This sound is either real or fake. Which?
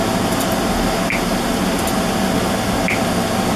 real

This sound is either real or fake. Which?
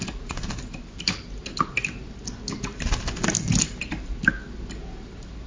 real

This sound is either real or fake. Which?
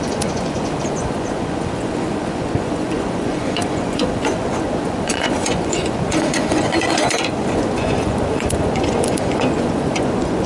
fake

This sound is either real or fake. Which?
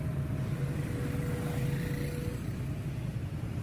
real